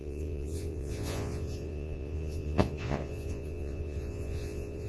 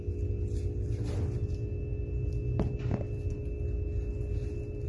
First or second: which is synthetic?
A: first